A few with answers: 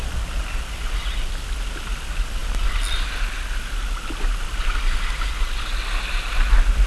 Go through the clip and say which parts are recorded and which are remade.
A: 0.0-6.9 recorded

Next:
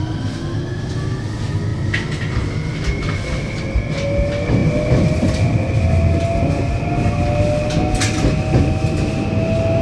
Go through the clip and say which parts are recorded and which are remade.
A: 0.0-9.8 recorded

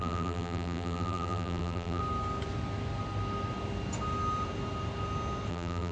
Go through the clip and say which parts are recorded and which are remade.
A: 0.0-2.0 remade; 2.0-5.5 recorded; 5.5-5.9 remade

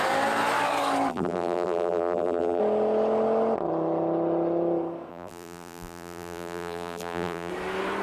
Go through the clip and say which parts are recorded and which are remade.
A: 0.0-1.1 recorded; 1.1-2.6 remade; 2.6-5.1 recorded; 5.1-7.5 remade; 7.5-8.0 recorded

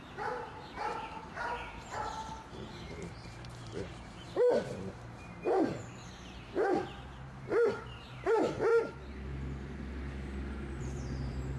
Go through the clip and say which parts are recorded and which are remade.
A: 0.0-8.7 remade; 8.7-10.8 recorded; 10.8-11.6 remade

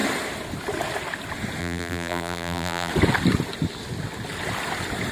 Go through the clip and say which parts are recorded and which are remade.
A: 0.0-1.6 recorded; 1.6-2.9 remade; 2.9-5.1 recorded

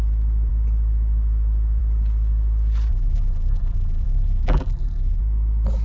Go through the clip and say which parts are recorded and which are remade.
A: 0.0-2.9 recorded; 2.9-5.2 remade; 5.2-5.8 recorded